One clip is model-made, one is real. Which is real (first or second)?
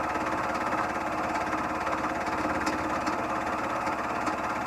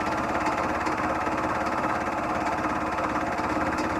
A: first